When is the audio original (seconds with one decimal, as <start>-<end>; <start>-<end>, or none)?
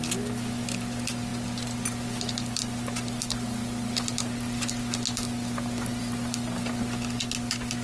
0.0-7.8